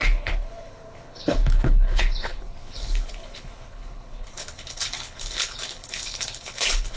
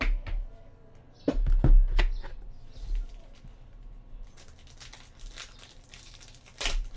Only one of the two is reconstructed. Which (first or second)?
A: first